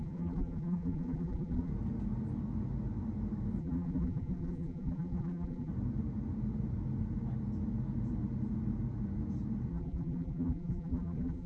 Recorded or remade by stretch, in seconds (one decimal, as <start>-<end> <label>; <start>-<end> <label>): 0.0-1.7 remade; 1.7-3.6 recorded; 3.6-5.7 remade; 5.7-9.7 recorded; 9.7-11.5 remade

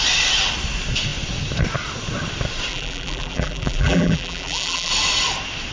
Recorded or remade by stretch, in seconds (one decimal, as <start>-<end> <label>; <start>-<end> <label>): 0.0-2.7 recorded; 2.7-4.9 remade; 4.9-5.7 recorded

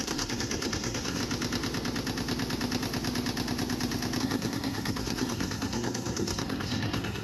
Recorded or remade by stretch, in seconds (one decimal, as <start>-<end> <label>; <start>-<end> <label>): 0.0-1.2 remade; 1.2-4.2 recorded; 4.2-7.2 remade

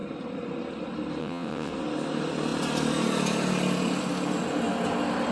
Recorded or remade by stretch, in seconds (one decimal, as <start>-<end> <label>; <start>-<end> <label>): 0.0-1.2 recorded; 1.2-1.7 remade; 1.7-5.3 recorded

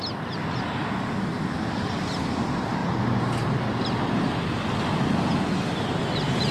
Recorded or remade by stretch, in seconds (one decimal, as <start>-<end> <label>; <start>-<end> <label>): 0.0-1.3 recorded; 1.3-2.4 remade; 2.4-6.5 recorded